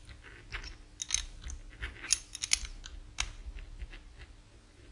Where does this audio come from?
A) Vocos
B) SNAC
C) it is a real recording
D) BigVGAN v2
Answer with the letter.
C